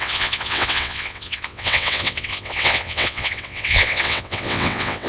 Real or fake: fake